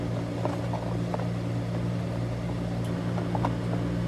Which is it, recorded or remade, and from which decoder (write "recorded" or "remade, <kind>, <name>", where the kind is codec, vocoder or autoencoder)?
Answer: recorded